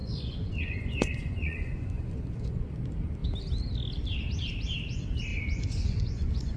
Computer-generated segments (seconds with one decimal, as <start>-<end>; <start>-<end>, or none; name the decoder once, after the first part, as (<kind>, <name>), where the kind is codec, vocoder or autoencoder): 0.0-2.7 (vocoder, Vocos); 5.3-6.6